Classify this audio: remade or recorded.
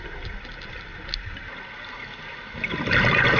recorded